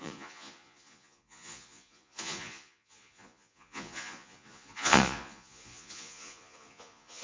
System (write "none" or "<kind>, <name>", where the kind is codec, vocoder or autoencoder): vocoder, Vocos